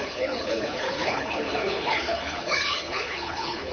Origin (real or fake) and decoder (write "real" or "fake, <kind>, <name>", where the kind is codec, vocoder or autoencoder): fake, codec, HILCodec